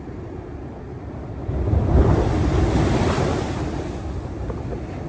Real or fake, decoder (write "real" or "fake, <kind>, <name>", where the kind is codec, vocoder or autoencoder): real